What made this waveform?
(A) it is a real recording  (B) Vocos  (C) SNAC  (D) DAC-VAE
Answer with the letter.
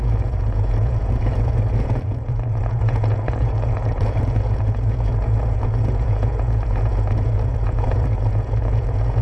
B